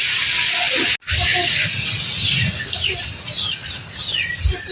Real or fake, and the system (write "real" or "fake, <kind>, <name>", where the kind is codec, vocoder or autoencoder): real